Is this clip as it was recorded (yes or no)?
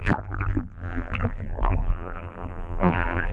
no